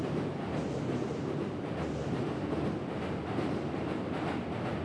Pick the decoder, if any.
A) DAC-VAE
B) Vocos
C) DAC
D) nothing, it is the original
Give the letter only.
D